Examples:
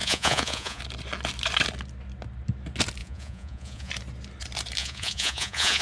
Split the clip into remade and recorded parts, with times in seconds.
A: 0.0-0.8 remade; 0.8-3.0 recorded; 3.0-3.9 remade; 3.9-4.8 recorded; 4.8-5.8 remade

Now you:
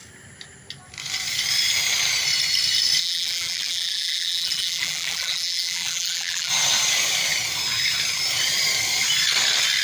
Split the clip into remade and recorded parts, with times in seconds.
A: 0.0-3.0 recorded; 3.0-6.5 remade; 6.5-9.8 recorded

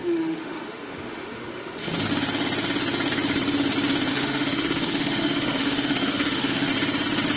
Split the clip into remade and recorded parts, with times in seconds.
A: 0.0-1.9 remade; 1.9-4.1 recorded; 4.1-6.7 remade; 6.7-7.4 recorded

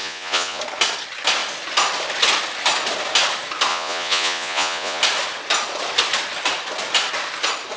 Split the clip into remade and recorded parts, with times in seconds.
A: 0.0-0.6 remade; 0.6-3.7 recorded; 3.7-5.0 remade; 5.0-7.8 recorded

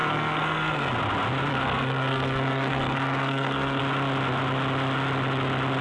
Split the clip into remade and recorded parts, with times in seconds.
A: 0.0-0.9 remade; 0.9-1.5 recorded; 1.5-3.8 remade; 3.8-5.8 recorded

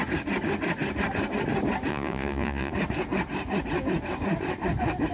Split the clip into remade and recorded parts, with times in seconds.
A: 0.0-1.9 recorded; 1.9-2.7 remade; 2.7-5.1 recorded